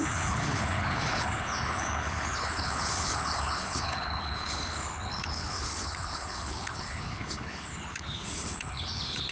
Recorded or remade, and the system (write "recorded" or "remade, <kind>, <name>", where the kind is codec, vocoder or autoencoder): remade, codec, HILCodec